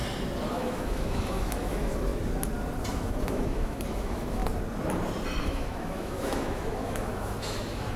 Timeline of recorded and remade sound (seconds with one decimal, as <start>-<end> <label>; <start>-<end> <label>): 0.0-0.5 recorded; 0.5-2.1 remade; 2.1-2.9 recorded; 2.9-4.4 remade; 4.4-5.4 recorded; 5.4-8.0 remade